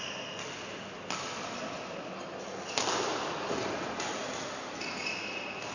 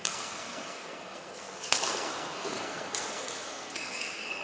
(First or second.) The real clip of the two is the first